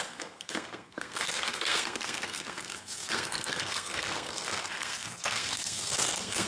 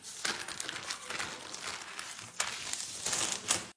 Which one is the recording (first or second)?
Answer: second